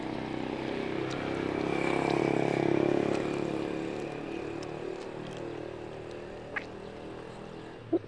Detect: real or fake real